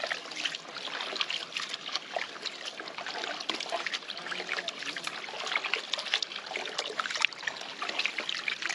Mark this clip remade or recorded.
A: recorded